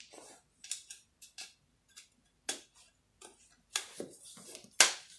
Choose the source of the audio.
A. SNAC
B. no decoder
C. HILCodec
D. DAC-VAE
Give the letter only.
B